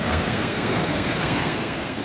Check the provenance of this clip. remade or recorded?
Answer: remade